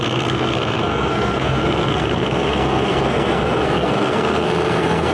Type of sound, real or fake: fake